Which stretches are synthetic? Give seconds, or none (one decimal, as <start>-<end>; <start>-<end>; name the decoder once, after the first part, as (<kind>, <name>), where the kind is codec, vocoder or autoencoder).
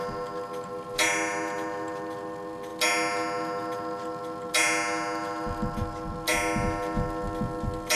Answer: none